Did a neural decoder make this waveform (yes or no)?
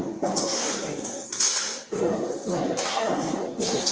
yes